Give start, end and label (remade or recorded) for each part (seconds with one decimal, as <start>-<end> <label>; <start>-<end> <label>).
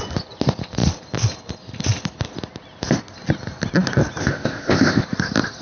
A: 0.0-4.2 recorded; 4.2-5.0 remade; 5.0-5.6 recorded